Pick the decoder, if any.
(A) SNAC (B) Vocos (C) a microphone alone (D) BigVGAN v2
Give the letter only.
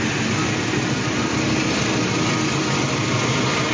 C